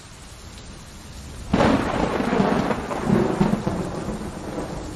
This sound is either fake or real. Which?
real